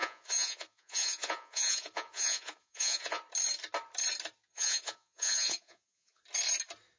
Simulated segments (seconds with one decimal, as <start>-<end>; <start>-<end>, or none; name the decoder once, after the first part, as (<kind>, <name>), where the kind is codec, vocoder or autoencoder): 0.0-3.2 (vocoder, Vocos); 4.5-6.2